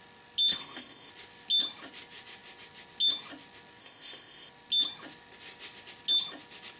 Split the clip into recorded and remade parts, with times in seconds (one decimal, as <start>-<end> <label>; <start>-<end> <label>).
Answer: 0.0-0.5 recorded; 0.5-1.1 remade; 1.1-3.8 recorded; 3.8-4.5 remade; 4.5-6.8 recorded